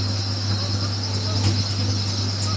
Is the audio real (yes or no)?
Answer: yes